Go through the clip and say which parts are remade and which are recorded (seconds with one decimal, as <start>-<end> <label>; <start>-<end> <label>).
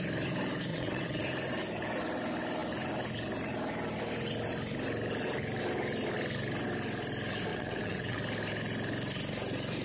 0.0-0.7 recorded; 0.7-1.2 remade; 1.2-7.5 recorded; 7.5-8.2 remade; 8.2-9.8 recorded